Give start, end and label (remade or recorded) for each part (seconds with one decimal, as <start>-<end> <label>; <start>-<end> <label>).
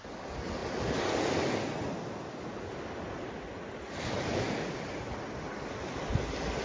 0.0-6.6 recorded